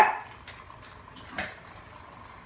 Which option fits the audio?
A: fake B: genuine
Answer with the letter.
B